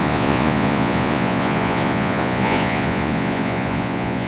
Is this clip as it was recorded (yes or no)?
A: no